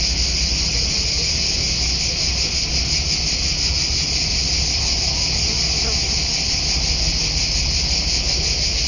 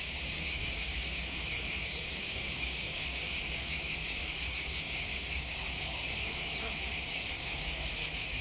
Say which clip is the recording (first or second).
first